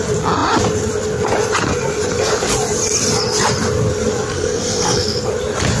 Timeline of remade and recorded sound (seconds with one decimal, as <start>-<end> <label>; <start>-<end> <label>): 0.0-4.3 recorded; 4.3-5.3 remade; 5.3-5.8 recorded